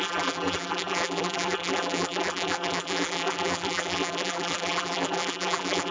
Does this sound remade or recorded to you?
remade